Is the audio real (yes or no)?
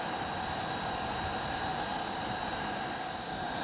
yes